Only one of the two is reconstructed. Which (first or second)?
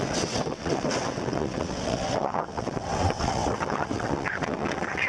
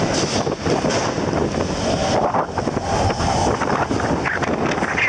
first